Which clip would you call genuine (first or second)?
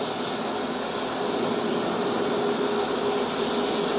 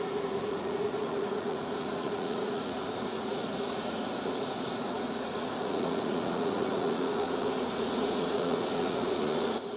first